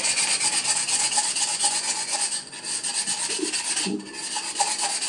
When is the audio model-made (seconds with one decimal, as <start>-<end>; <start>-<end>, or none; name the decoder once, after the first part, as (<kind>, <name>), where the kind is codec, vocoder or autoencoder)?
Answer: 1.5-2.6 (vocoder, Vocos)

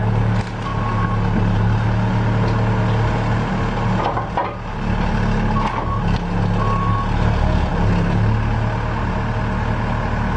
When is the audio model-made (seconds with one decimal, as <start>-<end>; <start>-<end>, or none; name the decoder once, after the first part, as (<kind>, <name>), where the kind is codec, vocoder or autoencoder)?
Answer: none

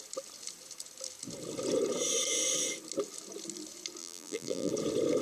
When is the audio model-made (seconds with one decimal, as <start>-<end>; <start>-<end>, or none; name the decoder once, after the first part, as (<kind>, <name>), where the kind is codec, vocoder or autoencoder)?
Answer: 4.0-4.7 (vocoder, BigVGAN v2)

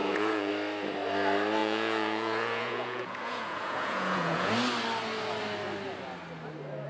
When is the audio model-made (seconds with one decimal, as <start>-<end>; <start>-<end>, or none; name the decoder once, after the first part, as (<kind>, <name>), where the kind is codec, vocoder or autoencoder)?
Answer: 0.0-0.5 (vocoder, Vocos); 1.6-4.5